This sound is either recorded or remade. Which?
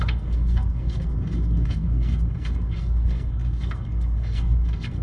remade